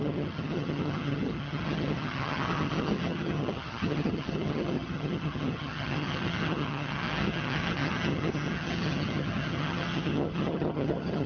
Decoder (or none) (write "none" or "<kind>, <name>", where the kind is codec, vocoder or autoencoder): vocoder, HiFi-GAN